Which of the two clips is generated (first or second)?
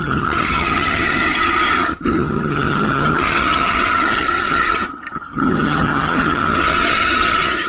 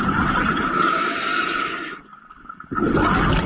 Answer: first